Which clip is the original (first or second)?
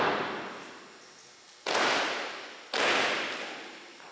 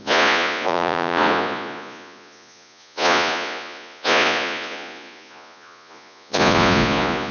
first